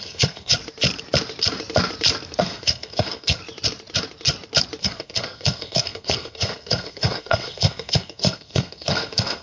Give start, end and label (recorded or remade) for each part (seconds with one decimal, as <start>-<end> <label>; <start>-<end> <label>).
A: 0.0-0.5 remade; 0.5-2.4 recorded; 2.4-3.4 remade; 3.4-4.8 recorded; 4.8-9.4 remade